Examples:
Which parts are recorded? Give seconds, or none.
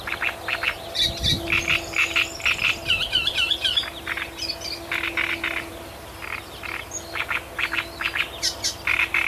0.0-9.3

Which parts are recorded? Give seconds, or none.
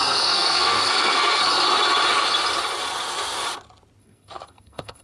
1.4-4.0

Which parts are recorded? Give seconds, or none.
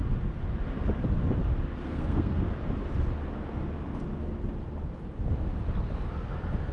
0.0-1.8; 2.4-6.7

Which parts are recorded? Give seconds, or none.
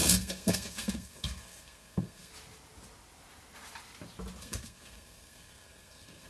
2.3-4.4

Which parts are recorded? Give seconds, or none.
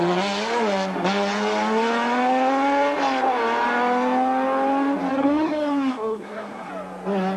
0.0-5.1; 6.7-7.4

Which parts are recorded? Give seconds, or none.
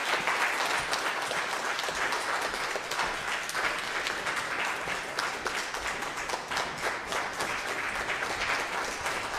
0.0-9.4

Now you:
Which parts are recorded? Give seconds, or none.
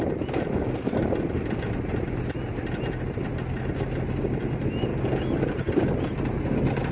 0.0-6.9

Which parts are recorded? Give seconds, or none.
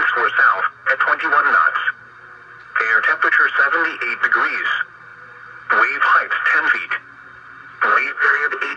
0.0-7.9